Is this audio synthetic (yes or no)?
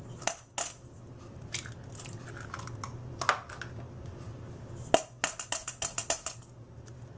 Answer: no